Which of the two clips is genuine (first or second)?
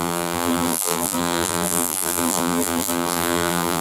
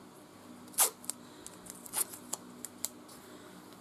second